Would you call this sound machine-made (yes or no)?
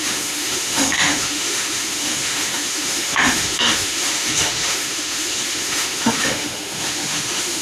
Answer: yes